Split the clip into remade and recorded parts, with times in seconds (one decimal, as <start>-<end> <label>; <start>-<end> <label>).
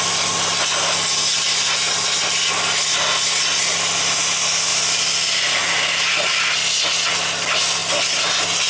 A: 0.0-8.7 recorded